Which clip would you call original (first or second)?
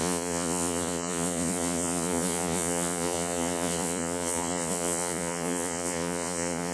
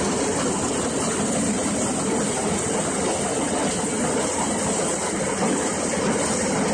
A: second